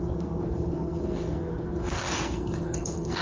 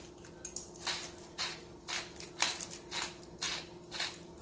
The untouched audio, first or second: second